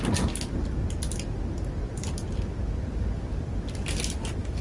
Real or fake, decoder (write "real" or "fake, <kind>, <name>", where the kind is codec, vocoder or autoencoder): real